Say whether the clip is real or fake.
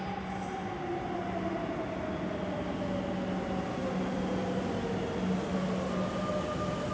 real